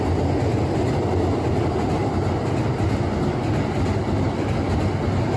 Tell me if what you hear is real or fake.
real